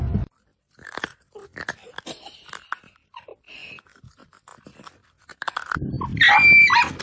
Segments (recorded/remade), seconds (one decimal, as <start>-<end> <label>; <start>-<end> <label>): 0.0-7.0 recorded